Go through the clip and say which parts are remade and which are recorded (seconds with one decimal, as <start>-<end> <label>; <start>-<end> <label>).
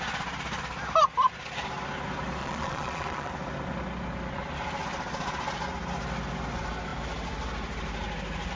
0.0-2.4 recorded; 2.4-3.3 remade; 3.3-8.6 recorded